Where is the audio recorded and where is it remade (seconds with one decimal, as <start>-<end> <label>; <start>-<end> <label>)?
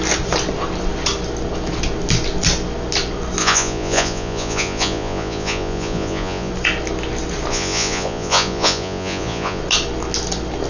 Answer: 0.0-3.4 recorded; 3.4-6.5 remade; 6.5-7.5 recorded; 7.5-9.6 remade; 9.6-10.7 recorded